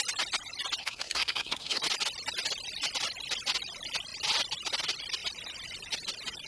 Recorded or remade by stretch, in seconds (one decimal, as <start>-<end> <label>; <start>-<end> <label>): 0.0-0.8 recorded; 0.8-1.8 remade; 1.8-6.5 recorded